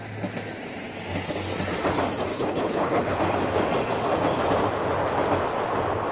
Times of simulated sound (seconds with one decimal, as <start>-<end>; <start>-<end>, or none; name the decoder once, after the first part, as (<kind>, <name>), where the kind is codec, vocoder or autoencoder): 2.3-3.2 (codec, HILCodec)